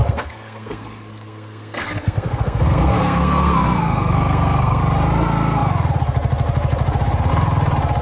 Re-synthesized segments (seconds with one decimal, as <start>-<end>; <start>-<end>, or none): 0.0-4.8